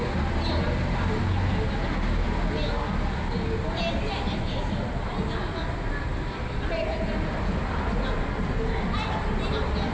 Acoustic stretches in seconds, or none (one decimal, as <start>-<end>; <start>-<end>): 0.0-9.9